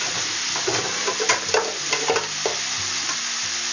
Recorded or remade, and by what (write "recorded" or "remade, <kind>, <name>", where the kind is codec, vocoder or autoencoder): recorded